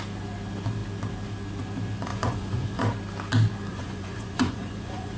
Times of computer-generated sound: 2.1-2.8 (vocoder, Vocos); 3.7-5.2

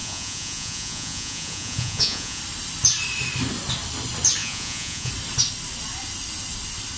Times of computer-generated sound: 0.0-2.4 (vocoder, Vocos); 4.4-5.1

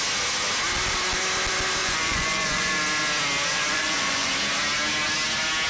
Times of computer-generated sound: 1.8-2.7 (vocoder, Vocos); 3.5-4.3